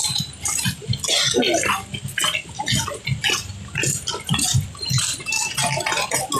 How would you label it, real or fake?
real